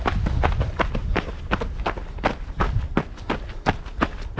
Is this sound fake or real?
real